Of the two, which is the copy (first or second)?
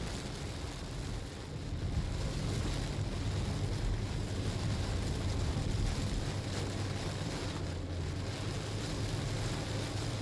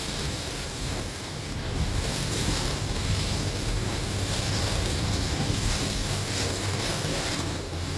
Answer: second